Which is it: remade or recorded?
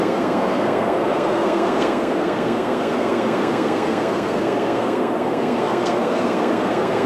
remade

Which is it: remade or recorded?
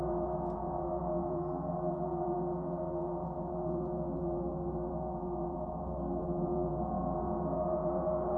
remade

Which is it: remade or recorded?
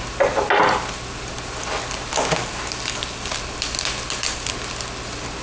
recorded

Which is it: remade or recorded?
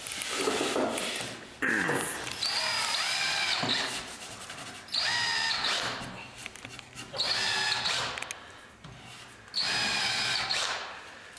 recorded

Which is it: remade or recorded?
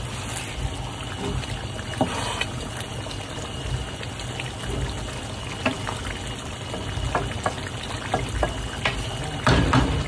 recorded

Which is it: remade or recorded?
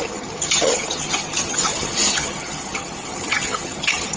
remade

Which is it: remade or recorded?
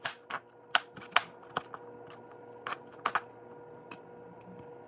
recorded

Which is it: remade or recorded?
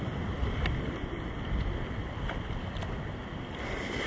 recorded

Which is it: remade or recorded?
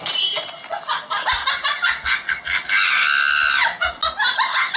recorded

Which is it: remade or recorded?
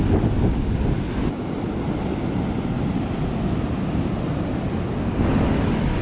recorded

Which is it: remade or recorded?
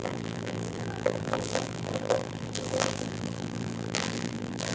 remade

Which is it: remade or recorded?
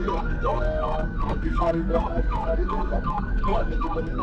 remade